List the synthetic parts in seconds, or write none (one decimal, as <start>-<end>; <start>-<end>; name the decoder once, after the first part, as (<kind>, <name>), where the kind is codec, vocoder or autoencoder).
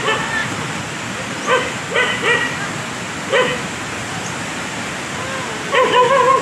none